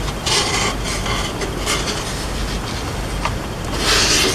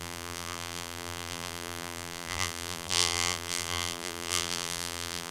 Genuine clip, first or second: first